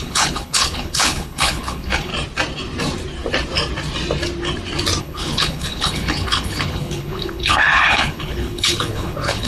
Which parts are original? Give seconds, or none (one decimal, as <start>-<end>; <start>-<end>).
2.1-5.0